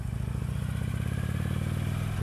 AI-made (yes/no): no